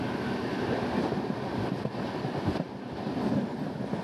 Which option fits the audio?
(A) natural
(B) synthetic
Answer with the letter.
A